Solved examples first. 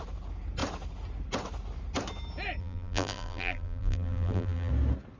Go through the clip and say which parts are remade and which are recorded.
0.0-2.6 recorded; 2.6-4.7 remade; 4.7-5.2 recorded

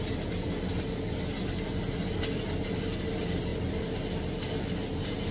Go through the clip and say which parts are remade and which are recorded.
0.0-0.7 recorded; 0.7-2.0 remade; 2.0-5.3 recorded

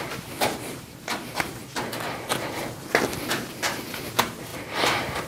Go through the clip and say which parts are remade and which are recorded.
0.0-1.6 remade; 1.6-3.8 recorded; 3.8-5.3 remade